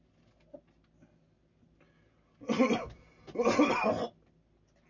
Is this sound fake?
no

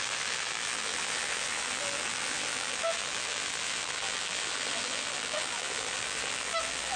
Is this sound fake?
yes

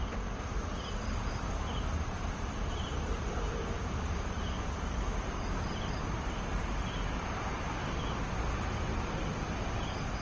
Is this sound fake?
yes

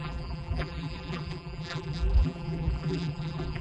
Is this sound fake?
yes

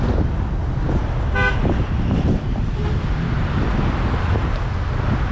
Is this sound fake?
no